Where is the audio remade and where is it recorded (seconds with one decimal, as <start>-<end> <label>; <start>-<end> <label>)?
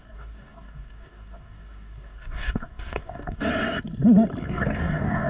0.0-3.5 remade; 3.5-4.4 recorded; 4.4-5.3 remade